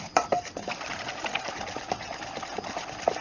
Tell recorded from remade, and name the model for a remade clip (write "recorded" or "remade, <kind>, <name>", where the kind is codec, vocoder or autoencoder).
recorded